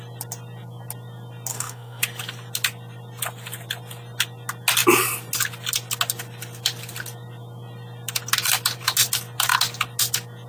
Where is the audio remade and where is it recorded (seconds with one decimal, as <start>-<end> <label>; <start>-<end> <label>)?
0.0-1.5 recorded; 1.5-2.0 remade; 2.0-10.5 recorded